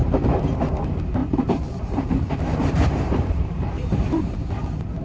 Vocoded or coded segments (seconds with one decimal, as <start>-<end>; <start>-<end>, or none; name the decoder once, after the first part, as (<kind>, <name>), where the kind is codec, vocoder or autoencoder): 0.0-0.6 (vocoder, BigVGAN v2); 1.2-4.2